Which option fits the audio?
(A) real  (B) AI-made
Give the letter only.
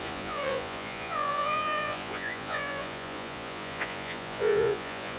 B